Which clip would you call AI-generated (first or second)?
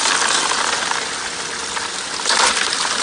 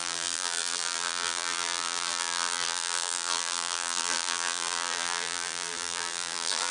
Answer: second